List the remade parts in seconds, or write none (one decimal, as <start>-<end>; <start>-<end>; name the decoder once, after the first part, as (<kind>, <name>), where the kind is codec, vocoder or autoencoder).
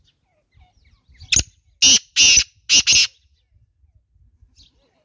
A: none